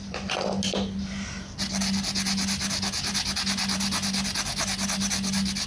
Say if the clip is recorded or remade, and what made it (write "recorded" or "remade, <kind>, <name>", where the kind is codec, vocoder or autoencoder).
recorded